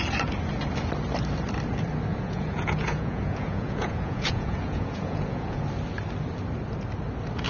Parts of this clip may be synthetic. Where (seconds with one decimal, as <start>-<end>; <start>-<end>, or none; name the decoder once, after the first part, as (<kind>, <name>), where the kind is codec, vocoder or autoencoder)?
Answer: 2.1-5.6 (vocoder, Vocos)